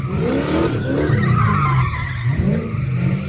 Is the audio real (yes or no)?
yes